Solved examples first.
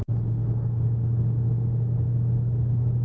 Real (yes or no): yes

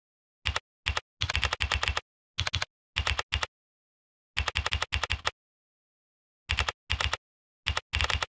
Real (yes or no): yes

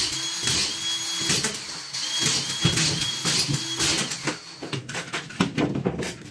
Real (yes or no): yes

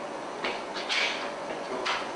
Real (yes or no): no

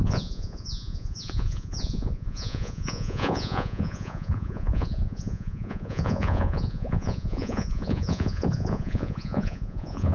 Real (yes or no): no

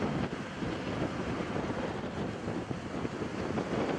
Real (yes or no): yes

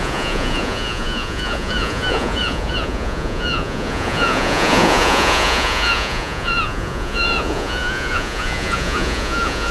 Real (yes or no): no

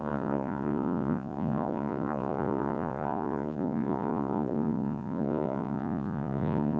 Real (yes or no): no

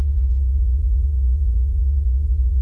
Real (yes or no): no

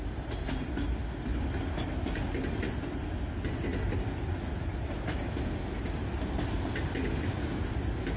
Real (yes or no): yes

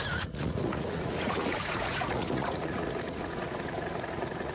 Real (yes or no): no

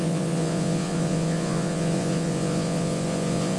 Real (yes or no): no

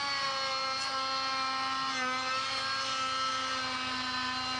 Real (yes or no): yes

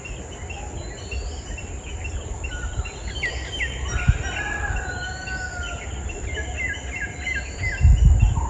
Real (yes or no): yes